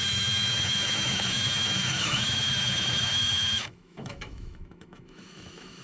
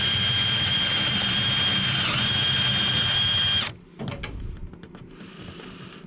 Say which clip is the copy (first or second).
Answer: first